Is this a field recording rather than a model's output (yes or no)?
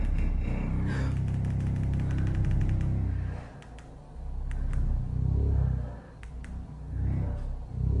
yes